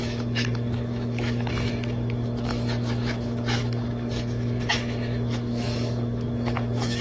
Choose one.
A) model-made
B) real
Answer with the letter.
A